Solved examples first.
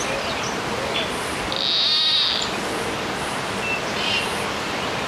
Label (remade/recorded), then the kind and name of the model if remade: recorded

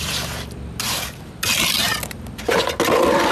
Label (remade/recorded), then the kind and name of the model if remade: recorded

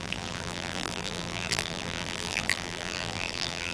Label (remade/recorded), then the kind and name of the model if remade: remade, vocoder, BigVGAN v2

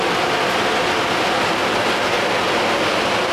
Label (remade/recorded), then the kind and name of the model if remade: recorded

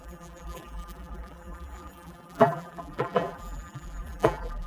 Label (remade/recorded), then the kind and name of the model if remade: remade, vocoder, BigVGAN v2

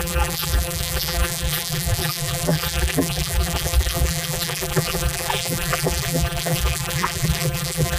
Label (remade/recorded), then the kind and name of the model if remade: remade, vocoder, BigVGAN v2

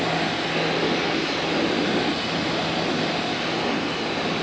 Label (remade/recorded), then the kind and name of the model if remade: recorded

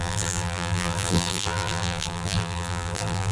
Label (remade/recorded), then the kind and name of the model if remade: remade, vocoder, BigVGAN v2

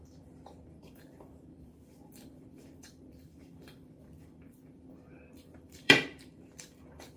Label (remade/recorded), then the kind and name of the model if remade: remade, vocoder, BigVGAN v2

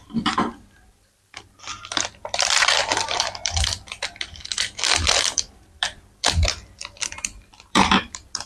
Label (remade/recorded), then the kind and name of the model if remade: remade, vocoder, BigVGAN v2